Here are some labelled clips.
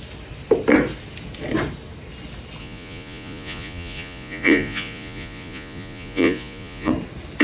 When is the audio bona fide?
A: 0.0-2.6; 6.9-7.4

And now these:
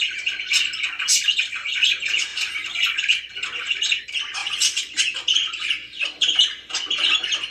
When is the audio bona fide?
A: 0.0-7.5

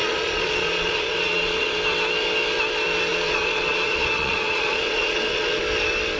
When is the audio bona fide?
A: 1.8-3.1; 5.6-6.2

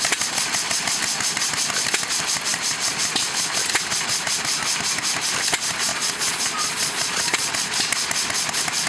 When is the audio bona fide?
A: 0.0-5.9; 7.5-8.9

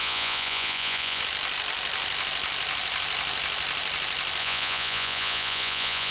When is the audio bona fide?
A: 1.2-4.4

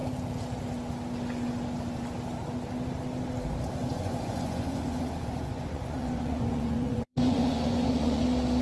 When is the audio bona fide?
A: 0.0-3.8; 8.2-8.6

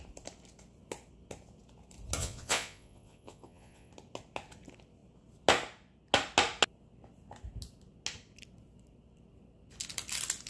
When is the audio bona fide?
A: 0.0-2.2; 3.9-10.5